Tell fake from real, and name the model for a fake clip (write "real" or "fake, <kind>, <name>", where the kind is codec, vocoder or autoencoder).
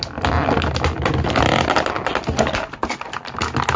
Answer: real